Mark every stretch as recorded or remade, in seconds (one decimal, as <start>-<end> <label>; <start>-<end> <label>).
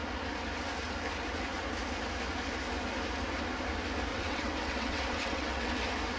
0.0-4.1 recorded; 4.1-5.7 remade; 5.7-6.2 recorded